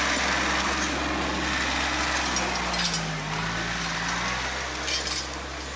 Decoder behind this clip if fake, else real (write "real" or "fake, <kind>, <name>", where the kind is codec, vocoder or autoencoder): real